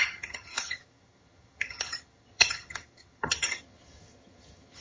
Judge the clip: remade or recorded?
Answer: remade